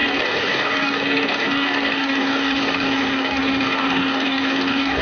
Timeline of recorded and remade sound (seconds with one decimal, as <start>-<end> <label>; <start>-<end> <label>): 0.0-5.0 remade